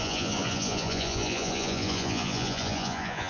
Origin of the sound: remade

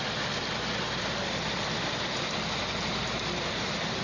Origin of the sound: recorded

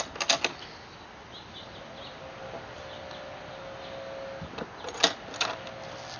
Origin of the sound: recorded